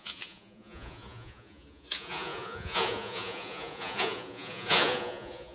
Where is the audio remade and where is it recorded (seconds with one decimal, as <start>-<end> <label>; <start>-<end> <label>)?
0.0-5.5 remade